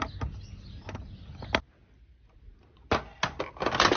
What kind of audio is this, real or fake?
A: real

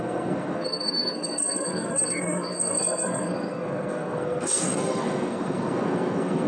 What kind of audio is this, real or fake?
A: fake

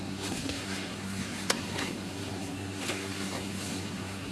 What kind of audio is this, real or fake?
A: fake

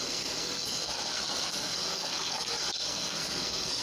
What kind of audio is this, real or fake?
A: fake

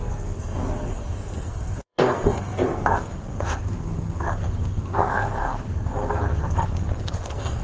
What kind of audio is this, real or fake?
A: fake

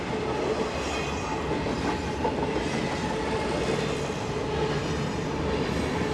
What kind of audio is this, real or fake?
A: real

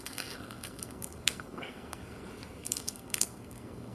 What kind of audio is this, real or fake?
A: fake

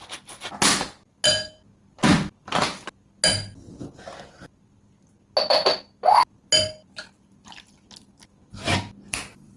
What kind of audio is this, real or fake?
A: real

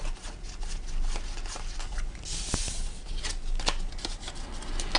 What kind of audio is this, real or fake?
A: real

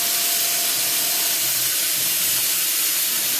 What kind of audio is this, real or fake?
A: real